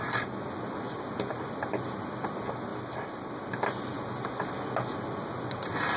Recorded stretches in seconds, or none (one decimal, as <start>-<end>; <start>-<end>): 0.0-6.0